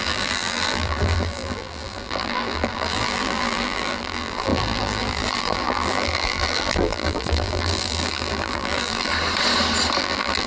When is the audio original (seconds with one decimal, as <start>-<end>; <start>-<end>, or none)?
9.1-10.0

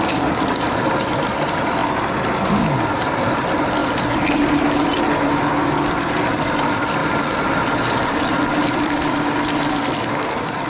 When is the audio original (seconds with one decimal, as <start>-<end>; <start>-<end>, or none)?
1.8-3.2; 3.8-5.3